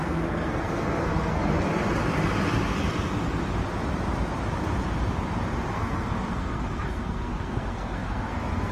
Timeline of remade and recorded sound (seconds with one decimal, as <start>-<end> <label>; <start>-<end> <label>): 0.0-1.4 remade; 1.4-5.7 recorded; 5.7-8.7 remade